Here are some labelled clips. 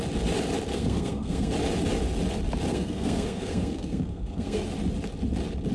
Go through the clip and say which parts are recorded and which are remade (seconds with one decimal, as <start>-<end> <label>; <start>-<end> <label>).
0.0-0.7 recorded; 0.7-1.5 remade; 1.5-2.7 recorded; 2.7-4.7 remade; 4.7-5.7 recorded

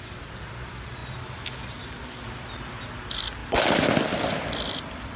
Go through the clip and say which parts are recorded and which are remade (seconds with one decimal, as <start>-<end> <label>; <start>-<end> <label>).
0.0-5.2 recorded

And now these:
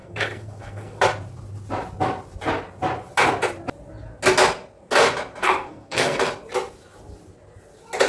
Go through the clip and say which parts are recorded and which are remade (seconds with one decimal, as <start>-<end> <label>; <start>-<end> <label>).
0.0-1.0 remade; 1.0-5.4 recorded; 5.4-6.3 remade; 6.3-8.1 recorded